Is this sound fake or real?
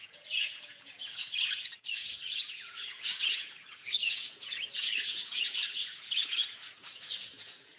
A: fake